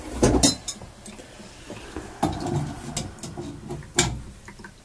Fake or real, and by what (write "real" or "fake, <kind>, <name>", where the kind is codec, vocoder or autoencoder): real